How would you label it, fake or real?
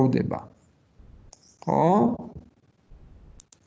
real